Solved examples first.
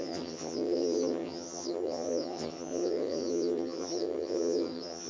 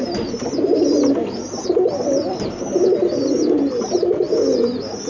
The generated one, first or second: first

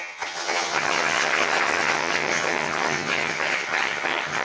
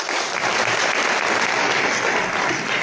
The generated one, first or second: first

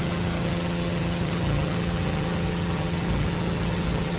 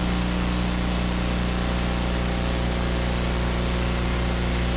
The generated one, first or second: first